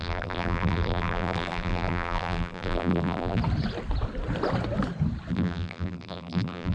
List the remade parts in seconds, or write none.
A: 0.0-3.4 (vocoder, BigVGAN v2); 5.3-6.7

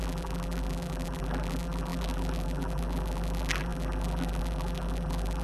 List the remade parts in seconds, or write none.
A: 0.0-5.4 (vocoder, BigVGAN v2)

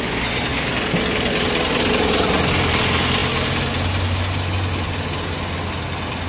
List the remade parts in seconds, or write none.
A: none